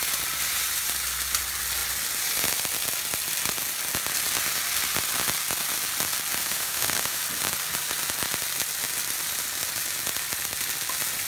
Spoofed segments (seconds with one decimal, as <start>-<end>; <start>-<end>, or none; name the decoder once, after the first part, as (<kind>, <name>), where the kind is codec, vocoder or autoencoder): 6.4-7.2 (autoencoder, DAC-VAE)

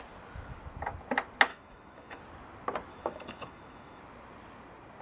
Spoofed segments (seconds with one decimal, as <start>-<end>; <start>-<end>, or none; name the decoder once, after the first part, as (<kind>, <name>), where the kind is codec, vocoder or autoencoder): 1.5-2.2 (autoencoder, DAC-VAE); 2.9-4.0

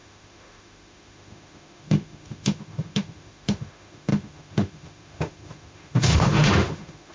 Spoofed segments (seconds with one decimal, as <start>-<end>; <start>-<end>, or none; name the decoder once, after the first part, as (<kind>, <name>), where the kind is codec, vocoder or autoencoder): 0.0-7.1 (autoencoder, DAC-VAE)

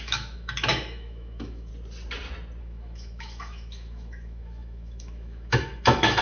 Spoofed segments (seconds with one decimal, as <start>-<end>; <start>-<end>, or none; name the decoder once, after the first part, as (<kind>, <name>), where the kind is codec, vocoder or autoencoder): 0.0-1.7 (autoencoder, DAC-VAE); 2.6-6.2

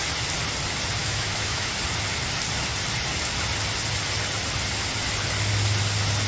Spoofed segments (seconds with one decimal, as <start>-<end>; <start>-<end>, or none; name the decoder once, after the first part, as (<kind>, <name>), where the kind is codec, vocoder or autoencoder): 1.0-1.7 (autoencoder, DAC-VAE)

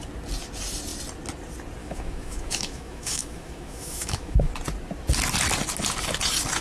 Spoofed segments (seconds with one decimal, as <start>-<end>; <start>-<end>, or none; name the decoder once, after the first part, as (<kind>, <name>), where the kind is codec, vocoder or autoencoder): 1.8-4.5 (autoencoder, DAC-VAE)

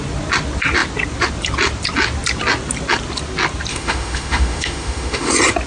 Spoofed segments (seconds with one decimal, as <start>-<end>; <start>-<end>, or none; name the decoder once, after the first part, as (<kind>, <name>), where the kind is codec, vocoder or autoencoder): 3.7-5.3 (autoencoder, DAC-VAE)